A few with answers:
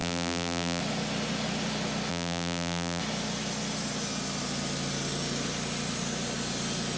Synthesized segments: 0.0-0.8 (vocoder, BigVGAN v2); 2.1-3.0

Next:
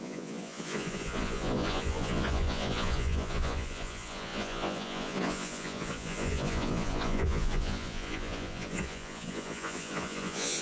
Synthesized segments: 0.0-10.6 (vocoder, Vocos)

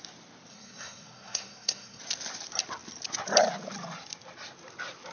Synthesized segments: 0.5-2.0 (codec, SNAC)

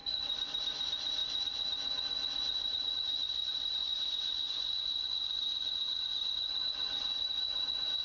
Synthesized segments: none

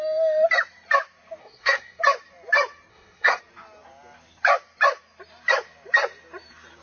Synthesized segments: 1.4-2.0 (codec, SNAC); 2.9-3.4